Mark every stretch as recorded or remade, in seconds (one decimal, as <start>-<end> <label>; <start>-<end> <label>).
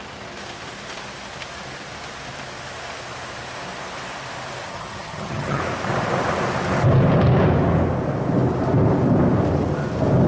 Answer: 0.0-4.7 recorded; 4.7-5.6 remade; 5.6-10.3 recorded